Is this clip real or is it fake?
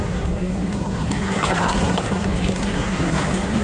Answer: fake